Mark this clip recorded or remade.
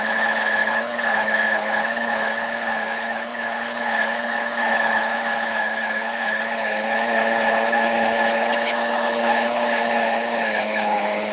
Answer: remade